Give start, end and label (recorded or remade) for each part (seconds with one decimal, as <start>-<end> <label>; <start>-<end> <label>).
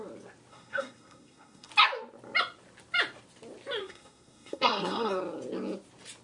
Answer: 0.0-0.5 recorded; 0.5-1.7 remade; 1.7-3.8 recorded; 3.8-5.2 remade; 5.2-6.2 recorded